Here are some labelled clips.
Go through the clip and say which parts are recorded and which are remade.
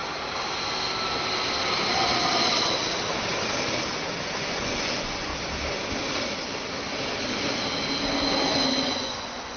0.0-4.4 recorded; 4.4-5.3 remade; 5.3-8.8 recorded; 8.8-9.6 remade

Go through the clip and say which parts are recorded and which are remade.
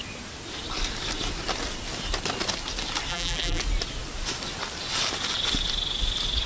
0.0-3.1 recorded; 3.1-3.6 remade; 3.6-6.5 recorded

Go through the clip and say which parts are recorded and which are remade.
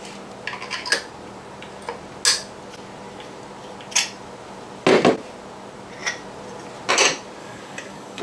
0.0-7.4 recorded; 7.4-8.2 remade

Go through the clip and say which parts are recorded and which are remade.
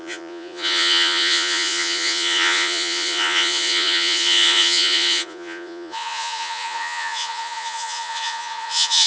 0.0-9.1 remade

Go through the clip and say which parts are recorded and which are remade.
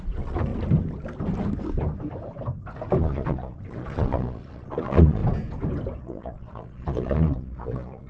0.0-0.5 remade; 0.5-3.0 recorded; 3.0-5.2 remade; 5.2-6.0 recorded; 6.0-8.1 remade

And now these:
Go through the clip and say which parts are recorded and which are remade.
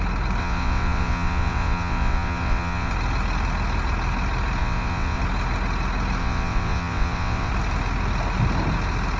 0.0-0.4 recorded; 0.4-2.9 remade; 2.9-4.6 recorded; 4.6-5.2 remade; 5.2-6.2 recorded; 6.2-7.5 remade; 7.5-9.2 recorded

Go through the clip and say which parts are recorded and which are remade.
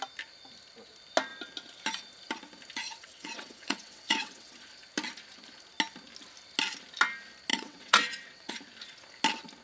0.0-2.8 recorded; 2.8-4.6 remade; 4.6-7.5 recorded; 7.5-8.5 remade; 8.5-9.6 recorded